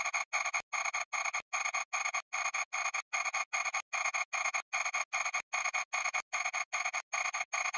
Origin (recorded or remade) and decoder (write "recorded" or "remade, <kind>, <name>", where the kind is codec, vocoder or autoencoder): recorded